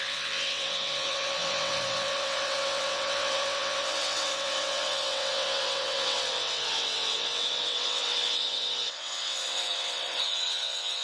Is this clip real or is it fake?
fake